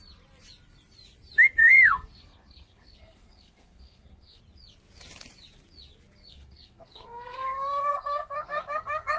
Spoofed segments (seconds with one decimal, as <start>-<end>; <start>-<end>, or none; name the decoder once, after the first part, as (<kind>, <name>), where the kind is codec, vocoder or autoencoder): 1.6-4.4 (codec, SNAC); 6.2-9.2